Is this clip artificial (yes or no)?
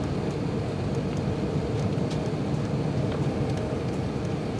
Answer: no